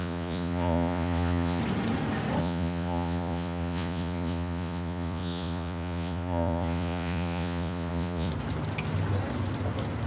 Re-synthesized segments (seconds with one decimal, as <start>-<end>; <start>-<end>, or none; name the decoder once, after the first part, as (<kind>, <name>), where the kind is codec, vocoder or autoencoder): 0.0-1.6 (vocoder, Vocos); 2.4-8.3